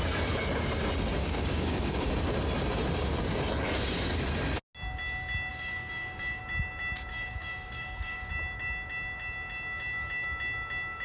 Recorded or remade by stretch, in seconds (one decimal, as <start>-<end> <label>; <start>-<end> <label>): 0.0-1.2 recorded; 1.2-2.1 remade; 2.1-5.5 recorded; 5.5-6.4 remade; 6.4-7.1 recorded; 7.1-8.3 remade; 8.3-11.0 recorded